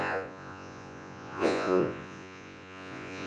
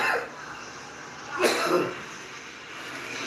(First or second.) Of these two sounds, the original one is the second